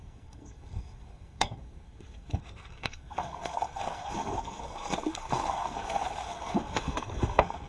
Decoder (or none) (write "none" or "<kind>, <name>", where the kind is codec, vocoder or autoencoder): codec, SNAC